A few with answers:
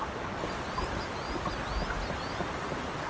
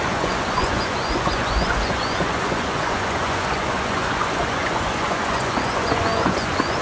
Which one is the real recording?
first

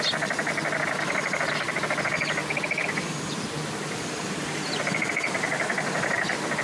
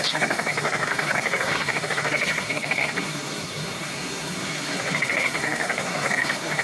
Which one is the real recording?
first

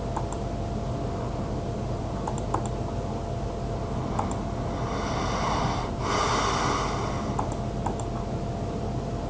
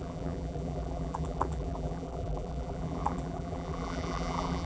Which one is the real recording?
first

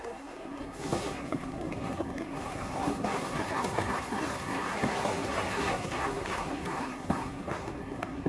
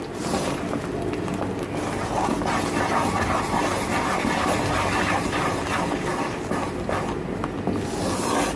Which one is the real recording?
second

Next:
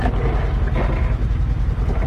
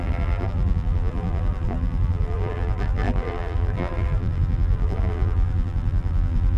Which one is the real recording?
first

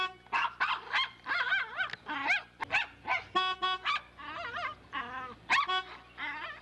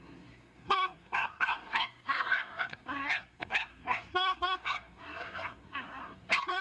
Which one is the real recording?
first